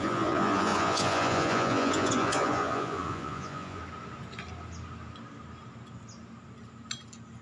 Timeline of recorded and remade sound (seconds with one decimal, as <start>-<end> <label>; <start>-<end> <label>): 0.0-3.8 remade; 3.8-7.4 recorded